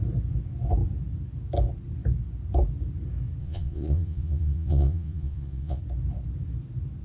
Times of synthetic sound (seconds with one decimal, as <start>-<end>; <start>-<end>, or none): 3.4-5.8